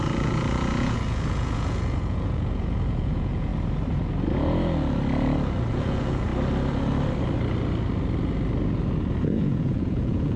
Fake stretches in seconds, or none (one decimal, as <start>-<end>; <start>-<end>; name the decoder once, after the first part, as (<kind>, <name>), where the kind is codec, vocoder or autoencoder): 0.0-3.5 (vocoder, Vocos); 5.7-6.3; 9.2-10.4